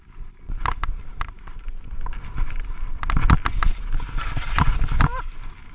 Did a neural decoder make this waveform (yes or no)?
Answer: no